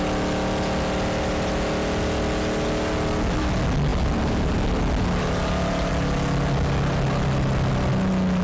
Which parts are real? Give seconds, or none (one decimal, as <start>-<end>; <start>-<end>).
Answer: 0.0-8.4